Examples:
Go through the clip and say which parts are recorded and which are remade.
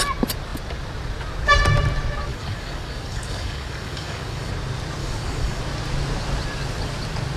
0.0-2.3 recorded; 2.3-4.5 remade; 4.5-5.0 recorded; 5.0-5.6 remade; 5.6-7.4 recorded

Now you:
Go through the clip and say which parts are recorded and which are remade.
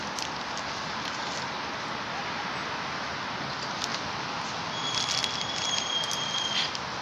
0.0-7.0 recorded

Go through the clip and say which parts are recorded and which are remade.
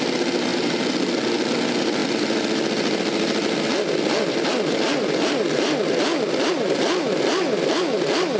0.0-8.4 recorded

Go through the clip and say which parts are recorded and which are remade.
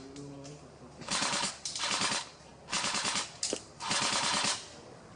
0.0-5.2 recorded